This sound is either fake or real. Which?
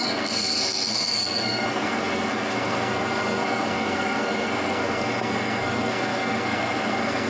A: fake